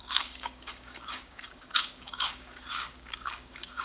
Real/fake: fake